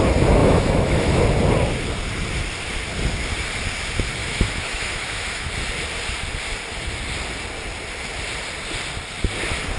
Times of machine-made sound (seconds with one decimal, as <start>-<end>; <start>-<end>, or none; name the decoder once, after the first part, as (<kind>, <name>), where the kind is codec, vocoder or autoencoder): 0.4-1.2 (autoencoder, DAC-VAE); 4.2-5.5